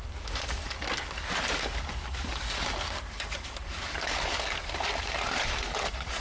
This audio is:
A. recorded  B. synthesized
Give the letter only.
B